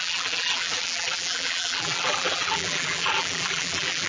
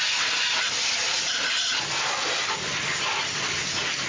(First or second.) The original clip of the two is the second